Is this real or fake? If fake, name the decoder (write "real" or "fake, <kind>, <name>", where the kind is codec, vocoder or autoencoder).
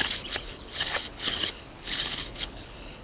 fake, codec, HILCodec